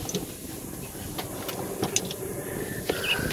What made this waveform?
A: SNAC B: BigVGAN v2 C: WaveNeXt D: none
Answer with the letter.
D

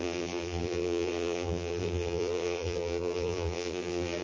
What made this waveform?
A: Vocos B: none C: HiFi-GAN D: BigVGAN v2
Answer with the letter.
D